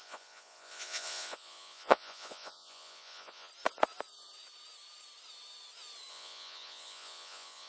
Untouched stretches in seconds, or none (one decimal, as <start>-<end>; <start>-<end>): 3.5-6.1